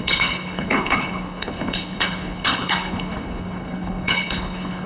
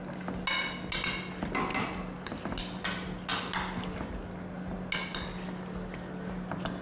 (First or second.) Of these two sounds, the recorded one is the second